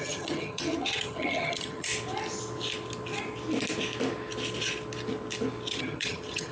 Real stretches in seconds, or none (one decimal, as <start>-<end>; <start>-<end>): 1.9-5.8